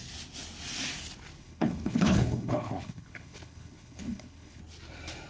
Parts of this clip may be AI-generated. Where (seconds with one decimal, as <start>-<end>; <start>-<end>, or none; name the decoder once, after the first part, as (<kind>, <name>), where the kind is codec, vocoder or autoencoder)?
1.4-4.6 (codec, HILCodec)